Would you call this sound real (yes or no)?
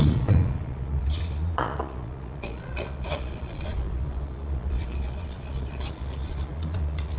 no